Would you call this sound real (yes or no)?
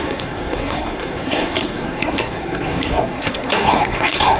no